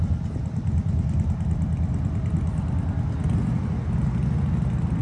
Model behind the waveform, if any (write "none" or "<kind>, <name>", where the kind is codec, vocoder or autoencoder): none